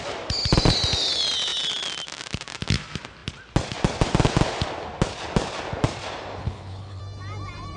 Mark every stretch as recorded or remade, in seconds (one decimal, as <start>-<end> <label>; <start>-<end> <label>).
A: 0.0-6.4 recorded; 6.4-7.0 remade; 7.0-7.8 recorded